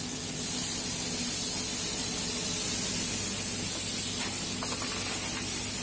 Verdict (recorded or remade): recorded